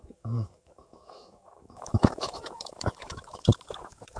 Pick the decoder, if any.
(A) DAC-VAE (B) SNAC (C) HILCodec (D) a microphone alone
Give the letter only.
A